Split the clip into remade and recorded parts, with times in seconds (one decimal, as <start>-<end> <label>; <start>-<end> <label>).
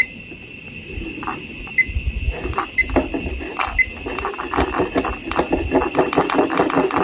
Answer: 0.0-7.0 recorded